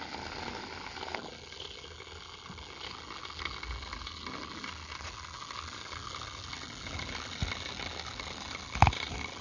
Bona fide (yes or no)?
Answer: yes